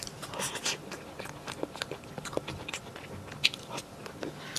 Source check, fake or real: real